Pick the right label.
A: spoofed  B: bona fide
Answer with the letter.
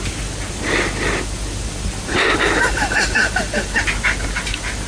B